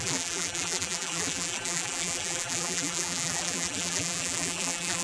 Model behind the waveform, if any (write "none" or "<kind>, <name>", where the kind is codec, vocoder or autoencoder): vocoder, BigVGAN v2